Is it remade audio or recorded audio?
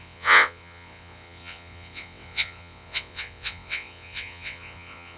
remade